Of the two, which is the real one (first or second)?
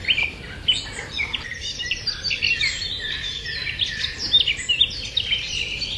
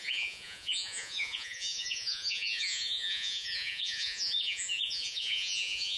first